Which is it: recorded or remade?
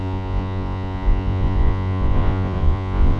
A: remade